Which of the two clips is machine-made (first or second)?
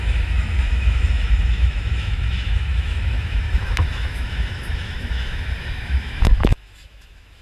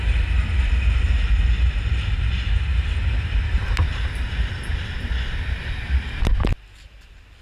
first